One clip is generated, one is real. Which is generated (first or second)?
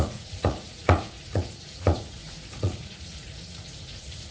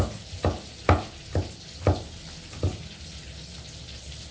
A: first